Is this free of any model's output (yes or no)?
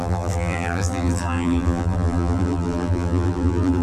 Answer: no